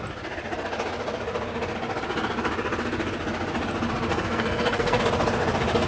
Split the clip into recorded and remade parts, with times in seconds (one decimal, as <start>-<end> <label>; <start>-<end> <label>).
0.0-4.1 recorded; 4.1-5.0 remade; 5.0-5.9 recorded